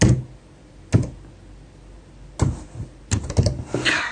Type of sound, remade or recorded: recorded